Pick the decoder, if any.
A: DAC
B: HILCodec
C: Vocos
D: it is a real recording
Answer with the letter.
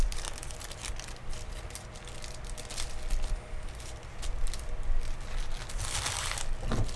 D